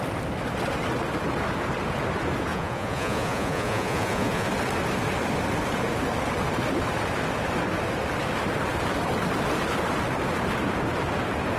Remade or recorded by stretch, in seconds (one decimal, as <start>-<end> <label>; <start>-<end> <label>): 0.0-2.5 recorded; 2.5-4.5 remade; 4.5-11.6 recorded